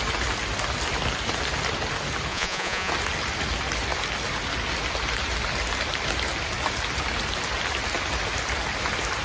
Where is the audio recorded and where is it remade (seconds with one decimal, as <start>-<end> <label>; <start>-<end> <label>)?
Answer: 0.0-2.3 recorded; 2.3-2.9 remade; 2.9-9.2 recorded